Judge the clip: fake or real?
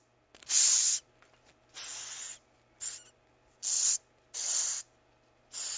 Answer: real